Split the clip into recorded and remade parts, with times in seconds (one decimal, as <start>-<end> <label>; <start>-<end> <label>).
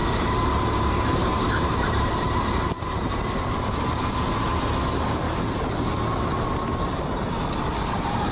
0.0-4.1 remade; 4.1-5.2 recorded; 5.2-5.9 remade; 5.9-8.3 recorded